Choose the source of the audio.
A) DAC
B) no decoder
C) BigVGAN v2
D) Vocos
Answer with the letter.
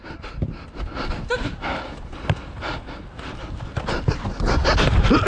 B